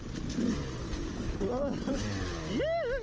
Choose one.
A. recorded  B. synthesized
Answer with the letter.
A